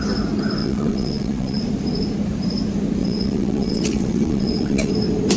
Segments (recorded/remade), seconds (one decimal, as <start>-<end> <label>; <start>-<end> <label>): 0.0-0.6 recorded; 0.6-1.6 remade; 1.6-3.0 recorded; 3.0-4.9 remade; 4.9-5.4 recorded